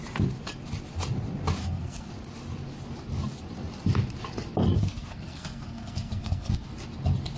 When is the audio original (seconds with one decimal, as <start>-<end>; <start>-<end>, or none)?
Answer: 0.0-1.6; 2.1-4.8; 6.7-7.4